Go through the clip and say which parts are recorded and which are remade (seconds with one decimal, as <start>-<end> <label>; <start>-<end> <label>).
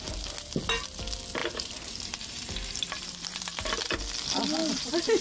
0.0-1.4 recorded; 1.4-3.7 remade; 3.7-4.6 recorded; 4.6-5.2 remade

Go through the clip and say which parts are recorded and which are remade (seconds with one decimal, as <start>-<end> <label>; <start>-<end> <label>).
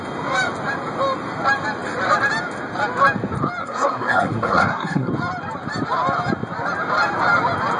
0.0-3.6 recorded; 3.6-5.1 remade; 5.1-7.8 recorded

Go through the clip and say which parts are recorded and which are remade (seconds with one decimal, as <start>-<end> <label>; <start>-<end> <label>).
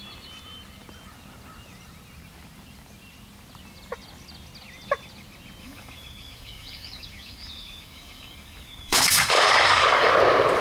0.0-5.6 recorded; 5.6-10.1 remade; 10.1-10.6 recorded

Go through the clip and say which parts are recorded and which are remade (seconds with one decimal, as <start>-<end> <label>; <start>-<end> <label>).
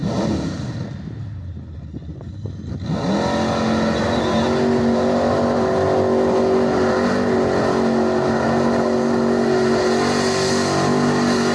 0.0-11.5 recorded